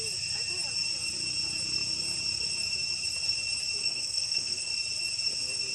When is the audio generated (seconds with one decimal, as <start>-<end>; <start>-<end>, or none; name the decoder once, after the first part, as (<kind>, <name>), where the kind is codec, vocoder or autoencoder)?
3.8-4.7 (codec, SNAC)